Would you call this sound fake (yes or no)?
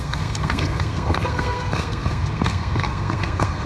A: yes